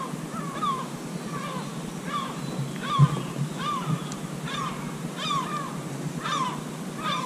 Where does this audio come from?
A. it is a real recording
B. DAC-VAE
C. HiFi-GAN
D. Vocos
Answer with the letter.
A